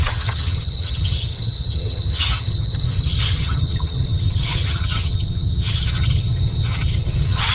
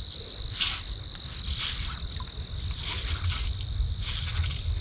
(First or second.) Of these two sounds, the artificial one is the first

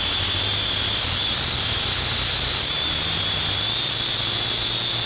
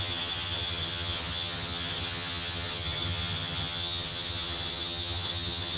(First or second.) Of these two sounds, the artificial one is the second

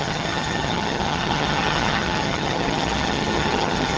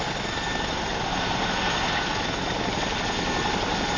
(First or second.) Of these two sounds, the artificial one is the first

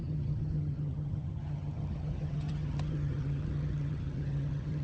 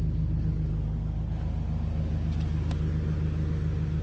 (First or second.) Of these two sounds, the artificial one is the first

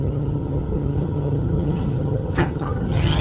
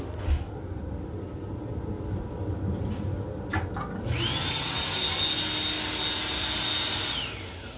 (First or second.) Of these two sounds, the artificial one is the first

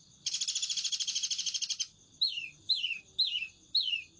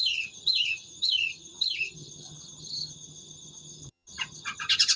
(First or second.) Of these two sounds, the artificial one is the second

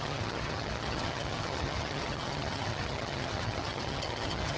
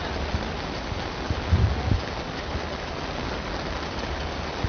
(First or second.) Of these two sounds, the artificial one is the first